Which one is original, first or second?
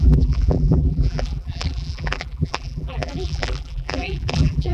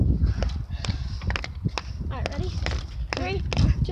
second